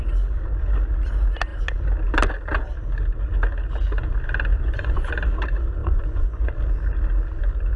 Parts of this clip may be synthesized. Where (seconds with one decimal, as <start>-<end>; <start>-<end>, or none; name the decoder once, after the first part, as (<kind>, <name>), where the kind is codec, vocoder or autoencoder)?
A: 4.5-5.1 (vocoder, Vocos); 5.8-6.5